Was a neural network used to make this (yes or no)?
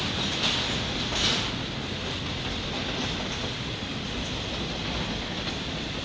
no